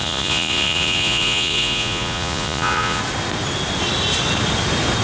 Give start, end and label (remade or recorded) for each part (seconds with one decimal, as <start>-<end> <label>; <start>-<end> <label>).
0.0-3.0 remade; 3.0-5.0 recorded

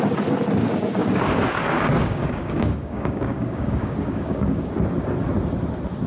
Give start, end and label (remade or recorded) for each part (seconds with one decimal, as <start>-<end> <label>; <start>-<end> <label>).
0.0-1.0 recorded; 1.0-4.7 remade; 4.7-6.1 recorded

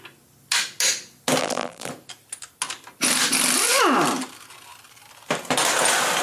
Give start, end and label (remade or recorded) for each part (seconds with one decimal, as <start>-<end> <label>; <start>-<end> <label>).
0.0-1.4 recorded; 1.4-1.9 remade; 1.9-6.2 recorded